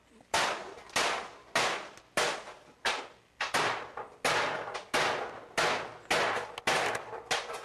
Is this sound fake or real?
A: real